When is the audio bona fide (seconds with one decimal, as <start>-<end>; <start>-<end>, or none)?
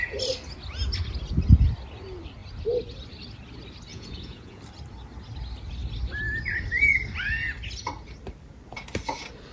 0.0-3.9; 4.6-9.5